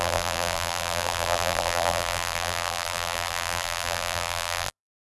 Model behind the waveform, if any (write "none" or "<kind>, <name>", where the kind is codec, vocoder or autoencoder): vocoder, BigVGAN v2